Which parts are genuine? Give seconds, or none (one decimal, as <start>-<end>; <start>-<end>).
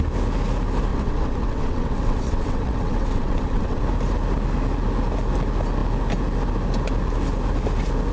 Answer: 0.0-0.9; 3.8-8.1